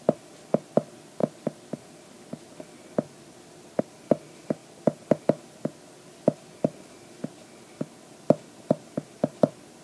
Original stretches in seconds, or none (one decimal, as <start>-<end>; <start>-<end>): 1.2-3.8; 4.6-9.1